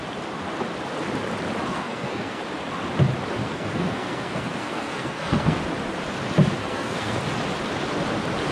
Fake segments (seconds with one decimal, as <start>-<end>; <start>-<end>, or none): 1.7-2.4; 3.4-5.6; 6.6-7.2